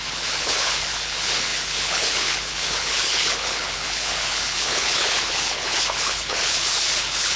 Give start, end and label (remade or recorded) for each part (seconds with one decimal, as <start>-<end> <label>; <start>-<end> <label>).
0.0-7.4 remade